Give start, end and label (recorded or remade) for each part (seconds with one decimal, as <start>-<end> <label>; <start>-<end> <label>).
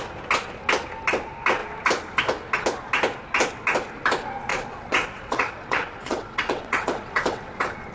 0.0-4.5 recorded; 4.5-7.9 remade